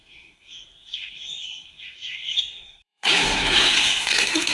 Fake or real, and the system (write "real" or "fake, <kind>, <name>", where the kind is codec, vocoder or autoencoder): fake, codec, SNAC